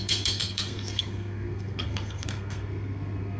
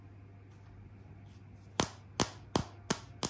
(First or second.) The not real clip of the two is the first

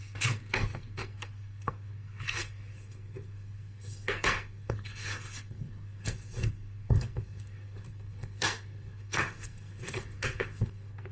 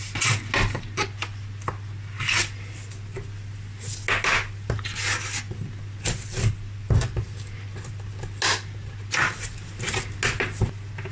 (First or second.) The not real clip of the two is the first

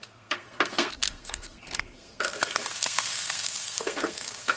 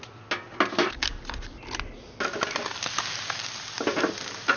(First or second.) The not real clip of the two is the first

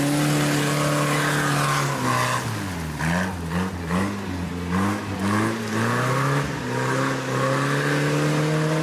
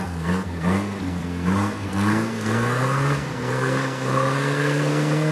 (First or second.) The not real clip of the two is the second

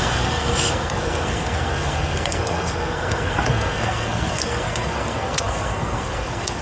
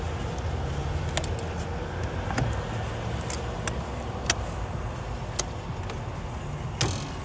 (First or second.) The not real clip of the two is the first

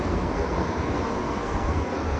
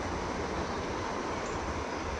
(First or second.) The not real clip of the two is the first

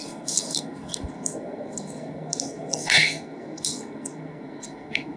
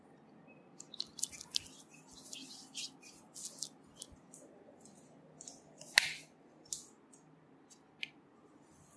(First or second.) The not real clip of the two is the first